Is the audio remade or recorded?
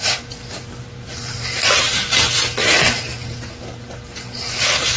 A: recorded